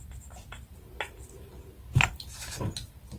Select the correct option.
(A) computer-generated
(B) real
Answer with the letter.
B